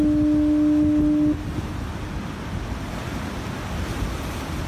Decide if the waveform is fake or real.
real